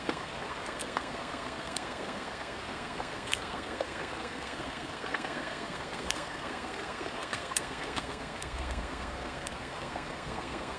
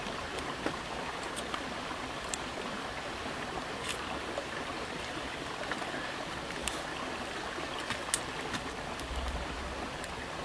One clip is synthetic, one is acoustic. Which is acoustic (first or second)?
second